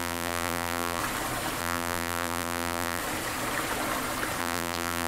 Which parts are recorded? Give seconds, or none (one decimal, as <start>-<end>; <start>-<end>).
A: 1.0-1.6; 3.0-4.4